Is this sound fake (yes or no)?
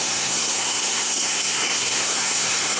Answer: yes